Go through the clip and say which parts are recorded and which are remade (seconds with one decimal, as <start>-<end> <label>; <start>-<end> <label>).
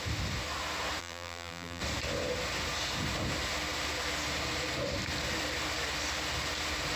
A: 0.0-1.0 recorded; 1.0-1.8 remade; 1.8-7.0 recorded